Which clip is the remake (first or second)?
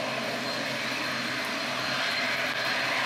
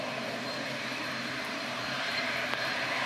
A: second